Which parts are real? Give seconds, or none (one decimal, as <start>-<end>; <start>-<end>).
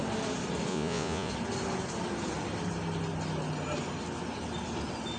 0.0-0.7; 1.3-5.2